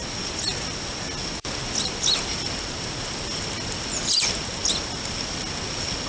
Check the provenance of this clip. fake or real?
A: real